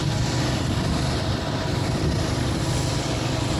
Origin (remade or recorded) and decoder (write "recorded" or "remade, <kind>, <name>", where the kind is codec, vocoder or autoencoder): recorded